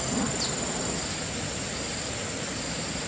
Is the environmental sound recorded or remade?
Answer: recorded